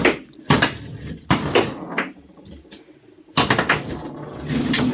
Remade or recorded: recorded